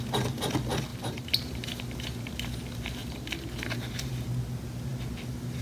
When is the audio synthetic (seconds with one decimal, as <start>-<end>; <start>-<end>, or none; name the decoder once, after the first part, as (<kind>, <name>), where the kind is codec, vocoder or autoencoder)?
0.9-1.8 (vocoder, BigVGAN v2); 3.0-4.1